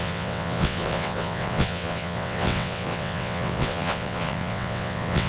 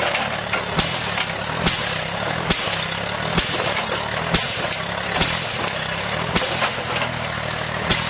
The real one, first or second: second